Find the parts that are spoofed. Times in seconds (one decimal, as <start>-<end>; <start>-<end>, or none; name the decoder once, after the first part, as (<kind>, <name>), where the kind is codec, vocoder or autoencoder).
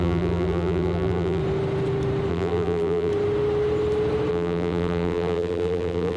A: 0.0-1.4 (vocoder, BigVGAN v2); 2.3-3.1; 4.3-6.2